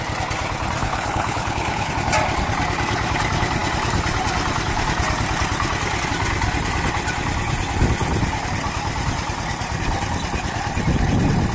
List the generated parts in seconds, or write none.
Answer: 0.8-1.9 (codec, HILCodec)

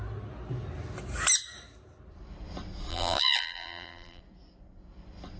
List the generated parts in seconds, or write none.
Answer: 2.9-4.2 (vocoder, BigVGAN v2)

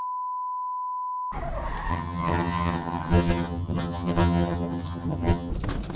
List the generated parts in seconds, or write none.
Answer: 1.9-5.5 (vocoder, HiFi-GAN)

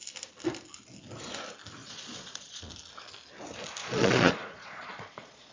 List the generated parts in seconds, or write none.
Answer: 1.8-2.7 (vocoder, Vocos); 3.8-5.5